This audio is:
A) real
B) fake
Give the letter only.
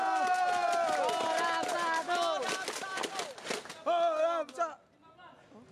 A